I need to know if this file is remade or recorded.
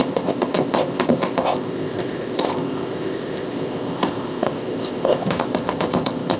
remade